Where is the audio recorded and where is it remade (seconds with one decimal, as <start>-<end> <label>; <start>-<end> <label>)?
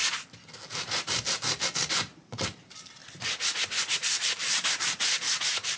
0.0-1.9 recorded; 1.9-3.0 remade; 3.0-3.9 recorded; 3.9-5.8 remade